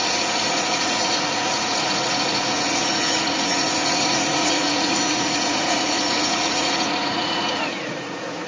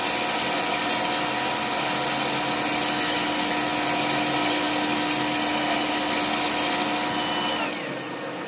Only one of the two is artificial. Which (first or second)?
first